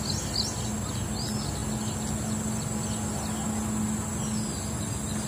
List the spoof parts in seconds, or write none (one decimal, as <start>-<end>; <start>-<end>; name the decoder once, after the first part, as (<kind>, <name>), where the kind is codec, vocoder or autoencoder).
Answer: none